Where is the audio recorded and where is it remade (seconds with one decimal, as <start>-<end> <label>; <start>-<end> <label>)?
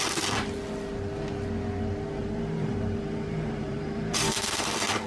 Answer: 0.0-2.2 recorded; 2.2-4.4 remade; 4.4-5.1 recorded